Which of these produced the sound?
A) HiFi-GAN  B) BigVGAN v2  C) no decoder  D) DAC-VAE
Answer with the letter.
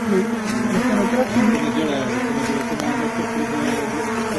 B